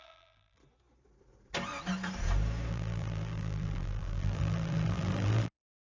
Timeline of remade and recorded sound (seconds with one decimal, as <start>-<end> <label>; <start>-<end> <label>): 0.0-0.6 remade; 0.6-2.7 recorded; 2.7-6.0 remade